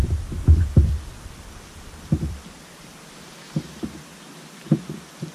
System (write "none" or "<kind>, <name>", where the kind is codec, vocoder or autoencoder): vocoder, BigVGAN v2